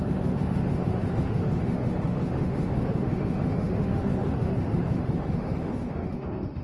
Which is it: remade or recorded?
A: remade